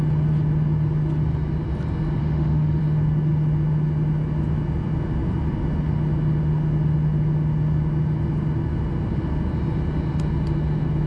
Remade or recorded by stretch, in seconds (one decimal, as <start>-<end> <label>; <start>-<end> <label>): 0.0-2.2 recorded; 2.2-2.8 remade; 2.8-11.1 recorded